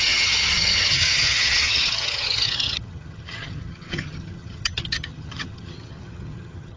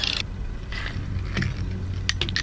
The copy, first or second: first